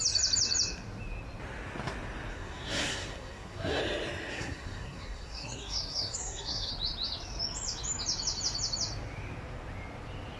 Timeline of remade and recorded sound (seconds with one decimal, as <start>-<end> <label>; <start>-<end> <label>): 0.0-2.3 recorded; 2.3-3.8 remade; 3.8-4.3 recorded; 4.3-6.7 remade; 6.7-10.4 recorded